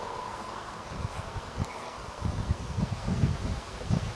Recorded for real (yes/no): no